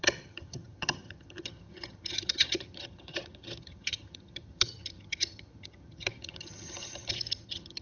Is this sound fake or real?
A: fake